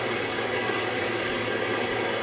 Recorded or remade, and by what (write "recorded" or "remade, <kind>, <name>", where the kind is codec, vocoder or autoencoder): remade, codec, DAC